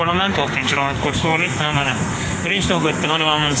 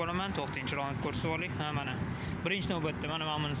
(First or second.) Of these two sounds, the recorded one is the second